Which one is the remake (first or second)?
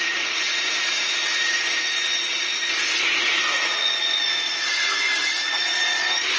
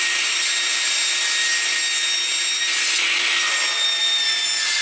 first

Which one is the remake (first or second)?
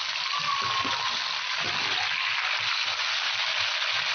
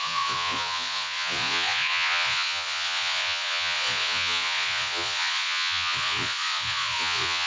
second